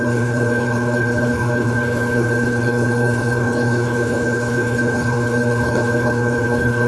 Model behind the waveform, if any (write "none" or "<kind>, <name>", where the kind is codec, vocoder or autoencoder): codec, HILCodec